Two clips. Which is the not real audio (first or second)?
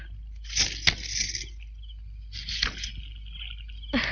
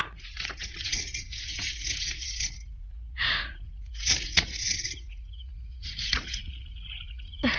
second